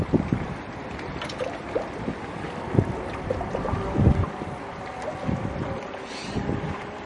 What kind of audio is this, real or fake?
fake